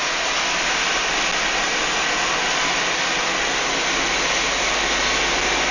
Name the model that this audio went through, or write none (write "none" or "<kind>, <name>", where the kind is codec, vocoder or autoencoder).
none